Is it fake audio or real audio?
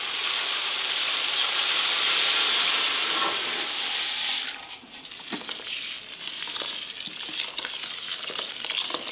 real